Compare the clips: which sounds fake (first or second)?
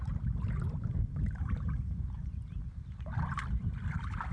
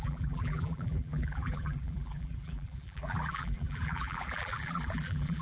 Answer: second